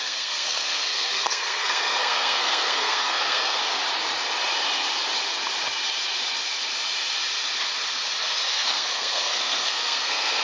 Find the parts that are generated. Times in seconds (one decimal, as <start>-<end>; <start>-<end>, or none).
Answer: 0.0-3.6; 8.5-10.4